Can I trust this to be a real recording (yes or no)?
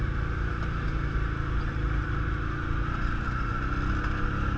yes